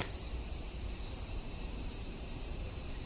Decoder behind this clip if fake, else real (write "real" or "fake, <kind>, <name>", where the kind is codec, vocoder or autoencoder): fake, vocoder, BigVGAN v2